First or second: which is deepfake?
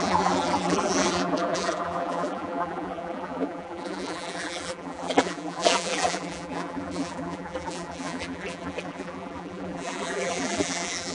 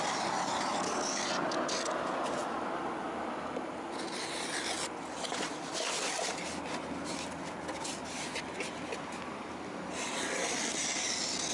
first